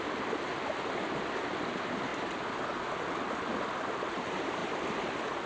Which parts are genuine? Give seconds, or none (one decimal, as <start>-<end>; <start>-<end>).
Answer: 0.0-5.5